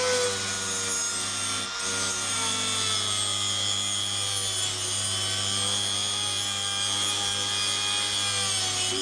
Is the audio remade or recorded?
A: recorded